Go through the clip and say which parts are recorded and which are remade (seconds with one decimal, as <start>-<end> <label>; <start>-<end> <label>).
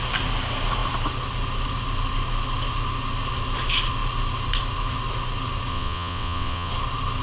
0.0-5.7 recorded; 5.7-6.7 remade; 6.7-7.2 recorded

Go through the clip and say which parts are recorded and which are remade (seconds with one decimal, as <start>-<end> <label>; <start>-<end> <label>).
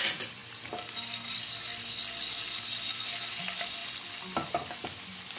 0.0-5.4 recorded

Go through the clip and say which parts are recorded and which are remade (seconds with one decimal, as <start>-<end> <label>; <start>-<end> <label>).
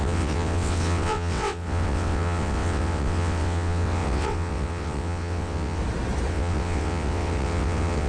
0.0-5.8 remade; 5.8-6.3 recorded; 6.3-8.1 remade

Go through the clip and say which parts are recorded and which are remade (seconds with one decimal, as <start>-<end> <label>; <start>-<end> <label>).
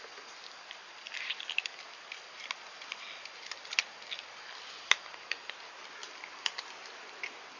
0.0-7.6 recorded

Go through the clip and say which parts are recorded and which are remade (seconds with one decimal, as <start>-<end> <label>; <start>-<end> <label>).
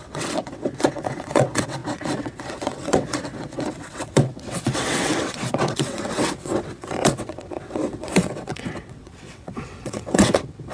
0.0-10.7 remade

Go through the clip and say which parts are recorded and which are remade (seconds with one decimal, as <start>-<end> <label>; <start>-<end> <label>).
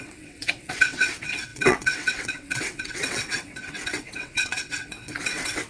0.0-5.7 remade